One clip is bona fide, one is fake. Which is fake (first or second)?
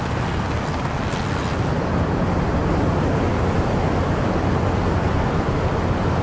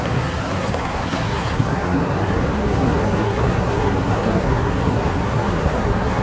second